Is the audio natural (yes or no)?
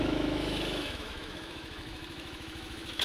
no